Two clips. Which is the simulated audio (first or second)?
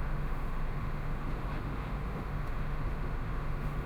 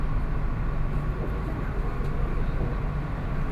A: first